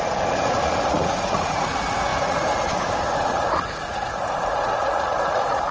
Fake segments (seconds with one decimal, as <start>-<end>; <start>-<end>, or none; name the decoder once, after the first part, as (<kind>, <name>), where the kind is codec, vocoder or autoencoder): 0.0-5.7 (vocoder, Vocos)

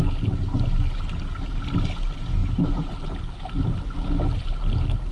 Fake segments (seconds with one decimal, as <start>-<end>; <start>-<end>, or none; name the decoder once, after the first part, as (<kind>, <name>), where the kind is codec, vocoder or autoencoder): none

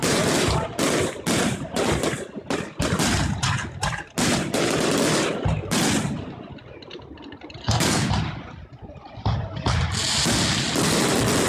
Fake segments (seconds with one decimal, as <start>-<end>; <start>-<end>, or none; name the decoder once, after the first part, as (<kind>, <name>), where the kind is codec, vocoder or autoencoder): 7.6-8.1 (codec, SNAC)

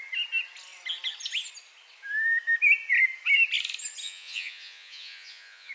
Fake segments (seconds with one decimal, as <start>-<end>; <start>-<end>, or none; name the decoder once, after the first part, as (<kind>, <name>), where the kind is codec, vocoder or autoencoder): 4.0-5.7 (vocoder, Vocos)

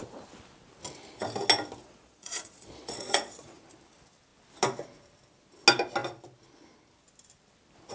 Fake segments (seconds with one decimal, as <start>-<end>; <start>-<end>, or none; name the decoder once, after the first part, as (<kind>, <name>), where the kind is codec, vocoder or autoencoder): 1.8-3.6 (vocoder, Vocos)

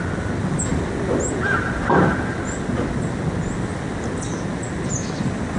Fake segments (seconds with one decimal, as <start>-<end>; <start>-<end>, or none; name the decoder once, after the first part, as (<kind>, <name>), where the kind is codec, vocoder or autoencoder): none

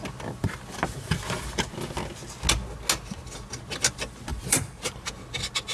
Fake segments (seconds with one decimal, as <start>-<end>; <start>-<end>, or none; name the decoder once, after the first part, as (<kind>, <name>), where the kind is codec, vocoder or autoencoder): 4.3-5.1 (vocoder, BigVGAN v2)

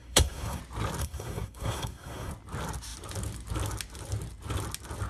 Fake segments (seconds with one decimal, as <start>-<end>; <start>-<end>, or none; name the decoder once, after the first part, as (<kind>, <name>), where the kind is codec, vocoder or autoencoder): 0.0-0.6 (codec, SNAC); 1.0-2.3